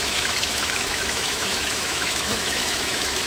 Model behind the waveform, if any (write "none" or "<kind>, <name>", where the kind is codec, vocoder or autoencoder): autoencoder, DAC-VAE